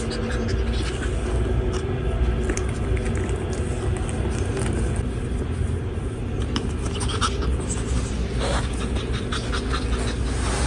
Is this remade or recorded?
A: recorded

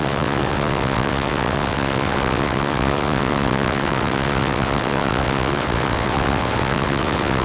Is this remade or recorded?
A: remade